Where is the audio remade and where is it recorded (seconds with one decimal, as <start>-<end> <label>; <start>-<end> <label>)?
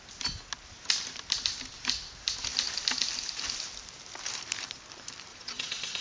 0.0-5.3 recorded; 5.3-6.0 remade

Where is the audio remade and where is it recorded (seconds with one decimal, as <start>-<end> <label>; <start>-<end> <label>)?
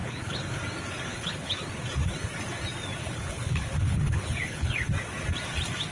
0.0-0.6 remade; 0.6-1.1 recorded; 1.1-1.6 remade; 1.6-3.0 recorded; 3.0-4.9 remade; 4.9-5.9 recorded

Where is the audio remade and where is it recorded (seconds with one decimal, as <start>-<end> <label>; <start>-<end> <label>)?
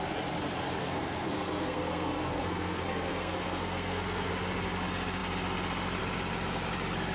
0.0-0.8 recorded; 0.8-4.3 remade; 4.3-7.1 recorded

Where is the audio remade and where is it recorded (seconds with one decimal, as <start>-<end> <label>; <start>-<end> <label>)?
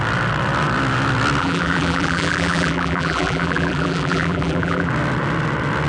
0.0-1.4 recorded; 1.4-4.9 remade; 4.9-5.9 recorded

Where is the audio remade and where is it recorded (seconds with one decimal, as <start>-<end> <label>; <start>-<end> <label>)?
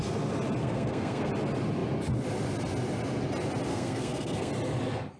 0.0-0.6 recorded; 0.6-1.3 remade; 1.3-3.7 recorded; 3.7-4.5 remade; 4.5-5.2 recorded